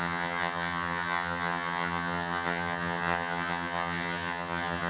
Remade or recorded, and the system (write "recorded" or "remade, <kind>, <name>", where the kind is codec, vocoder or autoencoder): remade, vocoder, HiFi-GAN